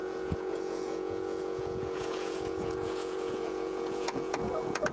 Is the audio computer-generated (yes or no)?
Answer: yes